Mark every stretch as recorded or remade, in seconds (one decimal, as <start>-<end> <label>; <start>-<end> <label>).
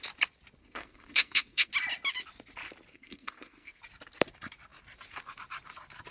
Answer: 0.0-0.6 recorded; 0.6-1.7 remade; 1.7-2.9 recorded; 2.9-3.8 remade; 3.8-6.1 recorded